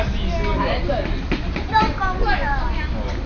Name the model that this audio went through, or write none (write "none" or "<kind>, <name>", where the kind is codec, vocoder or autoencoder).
none